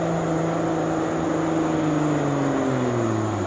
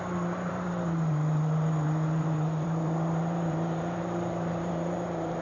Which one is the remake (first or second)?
second